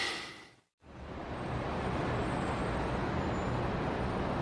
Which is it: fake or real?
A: real